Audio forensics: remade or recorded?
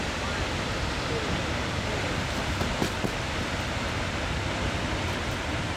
remade